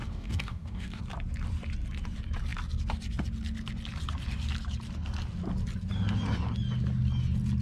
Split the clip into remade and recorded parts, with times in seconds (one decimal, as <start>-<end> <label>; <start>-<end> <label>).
0.0-1.0 remade; 1.0-7.6 recorded